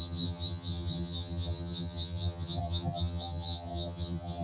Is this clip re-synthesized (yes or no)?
yes